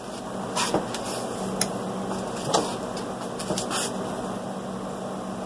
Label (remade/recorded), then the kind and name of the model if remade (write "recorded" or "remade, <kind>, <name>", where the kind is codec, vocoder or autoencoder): recorded